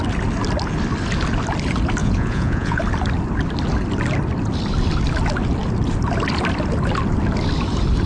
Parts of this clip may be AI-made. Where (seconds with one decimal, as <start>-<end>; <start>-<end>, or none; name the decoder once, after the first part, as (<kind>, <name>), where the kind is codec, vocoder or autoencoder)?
2.0-2.8 (vocoder, Vocos)